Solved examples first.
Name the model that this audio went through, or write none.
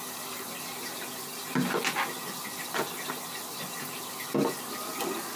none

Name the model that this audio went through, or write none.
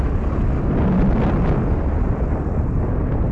none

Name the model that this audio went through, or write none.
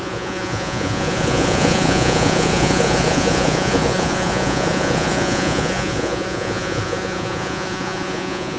vocoder, Vocos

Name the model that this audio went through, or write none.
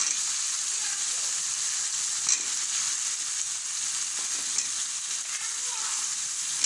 none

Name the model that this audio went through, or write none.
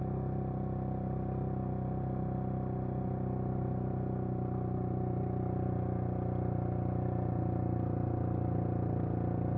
none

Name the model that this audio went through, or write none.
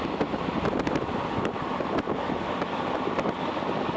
none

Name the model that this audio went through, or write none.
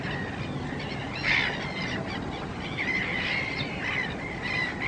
none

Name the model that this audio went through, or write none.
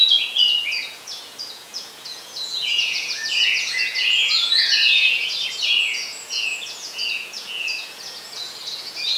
vocoder, Vocos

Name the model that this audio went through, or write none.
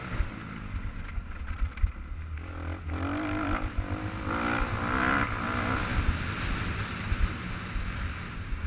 none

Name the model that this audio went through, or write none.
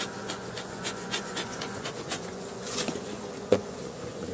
vocoder, Vocos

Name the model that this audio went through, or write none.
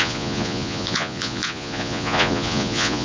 vocoder, Vocos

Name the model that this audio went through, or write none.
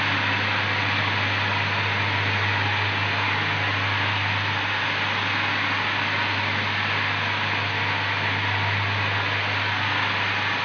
none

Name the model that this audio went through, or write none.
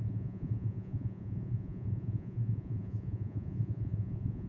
vocoder, Vocos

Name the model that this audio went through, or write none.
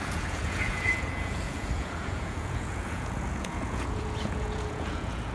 vocoder, Vocos